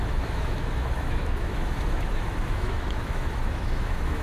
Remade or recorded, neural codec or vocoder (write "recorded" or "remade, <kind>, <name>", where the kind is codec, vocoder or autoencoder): remade, autoencoder, DAC-VAE